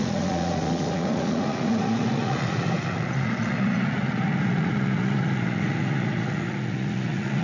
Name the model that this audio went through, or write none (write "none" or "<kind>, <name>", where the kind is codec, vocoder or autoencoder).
vocoder, Vocos